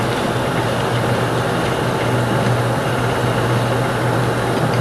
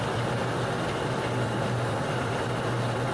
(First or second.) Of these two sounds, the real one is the first